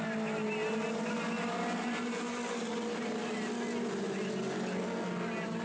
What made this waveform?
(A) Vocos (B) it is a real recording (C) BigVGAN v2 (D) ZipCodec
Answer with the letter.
B